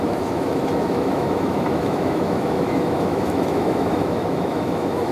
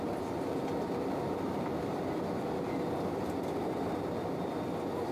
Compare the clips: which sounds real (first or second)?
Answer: second